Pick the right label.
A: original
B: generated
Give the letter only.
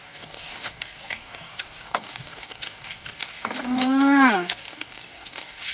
B